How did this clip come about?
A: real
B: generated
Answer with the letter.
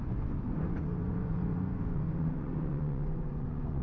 B